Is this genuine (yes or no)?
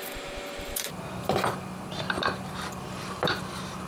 no